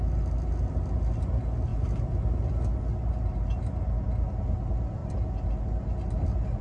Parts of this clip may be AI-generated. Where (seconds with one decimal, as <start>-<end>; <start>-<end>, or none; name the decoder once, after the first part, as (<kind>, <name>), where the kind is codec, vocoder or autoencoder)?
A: none